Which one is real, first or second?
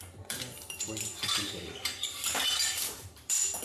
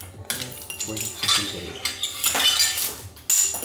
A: second